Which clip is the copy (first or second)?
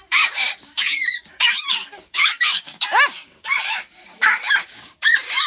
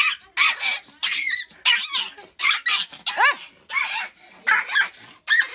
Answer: first